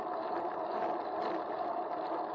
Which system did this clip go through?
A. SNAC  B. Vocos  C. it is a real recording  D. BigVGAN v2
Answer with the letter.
C